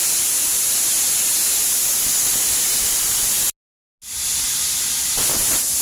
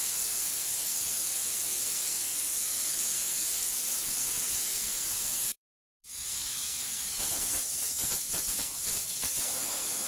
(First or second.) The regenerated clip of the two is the second